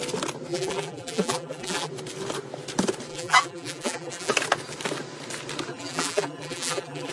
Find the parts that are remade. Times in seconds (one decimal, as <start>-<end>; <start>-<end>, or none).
0.5-1.9; 3.1-4.3; 5.7-7.1